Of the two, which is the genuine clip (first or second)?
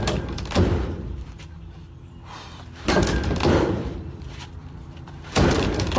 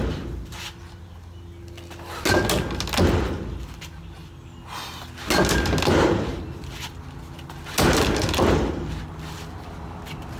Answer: second